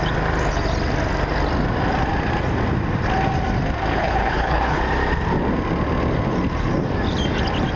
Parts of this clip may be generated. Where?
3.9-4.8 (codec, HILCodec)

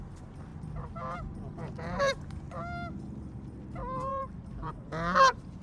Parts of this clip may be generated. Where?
0.5-2.4 (vocoder, BigVGAN v2); 4.1-4.7